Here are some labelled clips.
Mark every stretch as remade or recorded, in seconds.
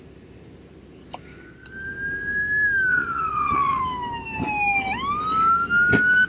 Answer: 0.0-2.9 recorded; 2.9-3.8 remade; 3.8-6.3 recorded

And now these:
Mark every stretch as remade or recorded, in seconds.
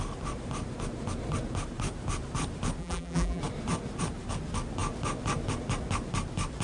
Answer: 0.0-2.8 recorded; 2.8-3.4 remade; 3.4-6.6 recorded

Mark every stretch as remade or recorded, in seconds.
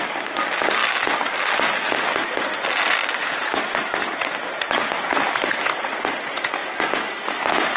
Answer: 0.0-3.0 recorded; 3.0-3.6 remade; 3.6-7.8 recorded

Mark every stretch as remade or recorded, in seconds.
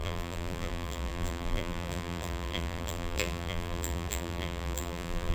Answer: 0.0-5.3 remade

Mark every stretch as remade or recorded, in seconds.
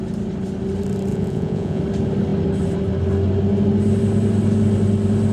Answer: 0.0-1.1 recorded; 1.1-1.8 remade; 1.8-5.3 recorded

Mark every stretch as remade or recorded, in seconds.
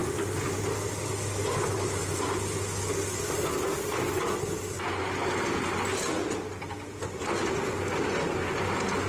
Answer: 0.0-9.1 recorded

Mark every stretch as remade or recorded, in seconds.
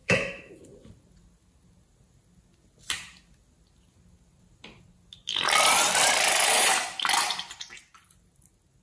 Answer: 0.0-0.5 remade; 0.5-8.8 recorded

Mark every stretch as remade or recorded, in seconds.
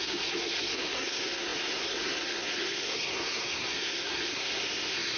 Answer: 0.0-5.2 remade